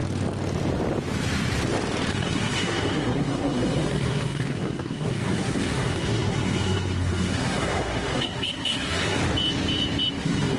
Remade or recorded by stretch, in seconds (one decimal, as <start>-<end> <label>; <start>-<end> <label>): 0.0-2.1 recorded; 2.1-9.2 remade; 9.2-10.2 recorded; 10.2-10.6 remade